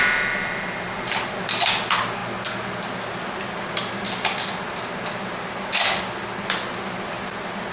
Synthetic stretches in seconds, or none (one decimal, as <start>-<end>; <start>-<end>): none